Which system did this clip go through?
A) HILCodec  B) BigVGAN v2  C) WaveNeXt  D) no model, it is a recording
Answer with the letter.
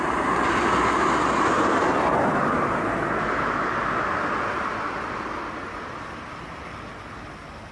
D